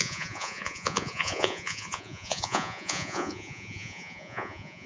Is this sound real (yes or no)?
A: no